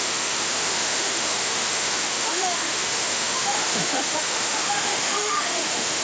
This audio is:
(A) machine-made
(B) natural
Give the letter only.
A